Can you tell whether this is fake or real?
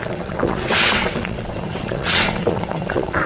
fake